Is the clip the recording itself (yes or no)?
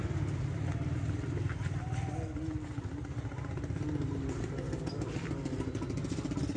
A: yes